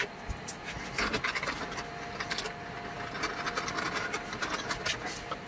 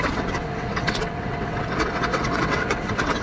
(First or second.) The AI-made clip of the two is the second